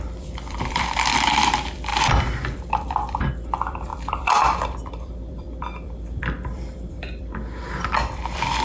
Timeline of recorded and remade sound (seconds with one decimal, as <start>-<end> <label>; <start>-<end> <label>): 0.0-8.6 remade